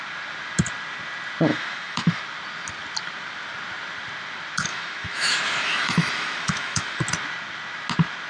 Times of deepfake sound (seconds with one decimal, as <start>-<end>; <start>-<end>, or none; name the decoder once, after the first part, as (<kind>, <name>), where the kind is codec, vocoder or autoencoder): 1.5-2.2 (autoencoder, DAC-VAE); 4.7-7.0

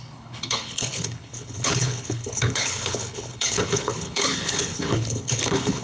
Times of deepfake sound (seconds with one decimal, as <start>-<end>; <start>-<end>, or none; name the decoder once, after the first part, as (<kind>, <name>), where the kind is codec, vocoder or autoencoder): 0.0-5.8 (codec, HILCodec)